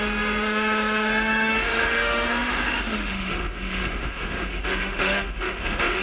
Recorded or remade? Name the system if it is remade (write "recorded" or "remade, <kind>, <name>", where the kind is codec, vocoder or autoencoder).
remade, autoencoder, DAC-VAE